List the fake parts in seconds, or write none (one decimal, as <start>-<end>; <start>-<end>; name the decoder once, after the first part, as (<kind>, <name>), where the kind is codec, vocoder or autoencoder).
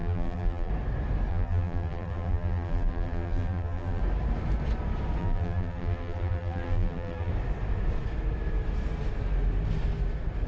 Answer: 0.0-0.7 (vocoder, BigVGAN v2); 1.3-4.0; 5.2-7.3